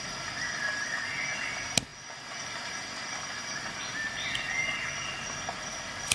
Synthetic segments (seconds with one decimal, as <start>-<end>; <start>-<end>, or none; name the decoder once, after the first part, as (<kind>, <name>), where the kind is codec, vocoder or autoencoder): none